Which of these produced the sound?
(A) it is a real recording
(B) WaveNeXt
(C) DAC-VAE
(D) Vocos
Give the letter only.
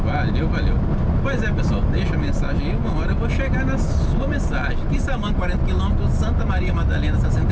A